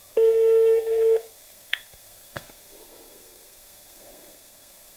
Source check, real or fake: fake